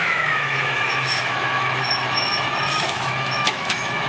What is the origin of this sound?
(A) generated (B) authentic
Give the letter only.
A